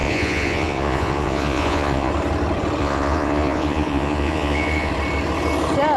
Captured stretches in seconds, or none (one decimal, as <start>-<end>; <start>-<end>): 2.1-2.8; 4.9-6.0